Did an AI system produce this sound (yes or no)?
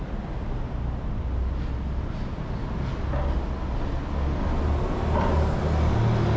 no